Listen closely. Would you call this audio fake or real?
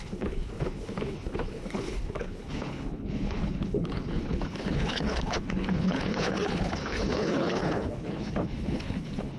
fake